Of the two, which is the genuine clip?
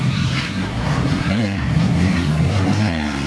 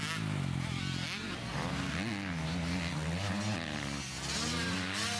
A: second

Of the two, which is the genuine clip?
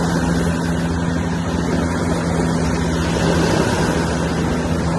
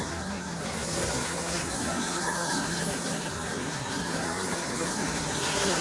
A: first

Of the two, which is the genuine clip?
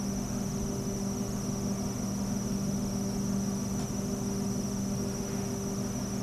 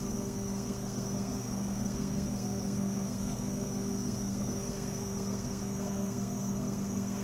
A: first